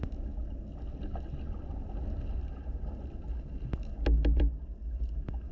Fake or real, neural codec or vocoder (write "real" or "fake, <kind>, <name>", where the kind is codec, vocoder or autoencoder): real